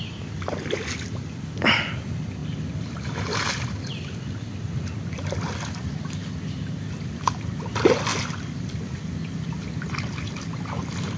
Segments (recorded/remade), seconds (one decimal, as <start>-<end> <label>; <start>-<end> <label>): 0.0-11.2 recorded

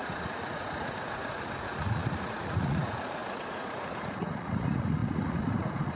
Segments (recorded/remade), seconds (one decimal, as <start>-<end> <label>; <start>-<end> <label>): 0.0-6.0 remade

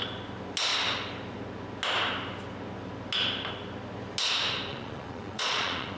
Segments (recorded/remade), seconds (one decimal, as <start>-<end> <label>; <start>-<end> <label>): 0.0-4.7 recorded; 4.7-6.0 remade

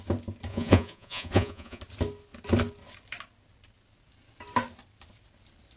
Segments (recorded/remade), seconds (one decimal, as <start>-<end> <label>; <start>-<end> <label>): 0.0-0.5 recorded; 0.5-1.8 remade; 1.8-5.8 recorded